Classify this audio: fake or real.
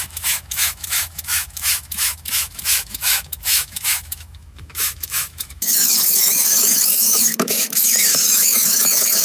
fake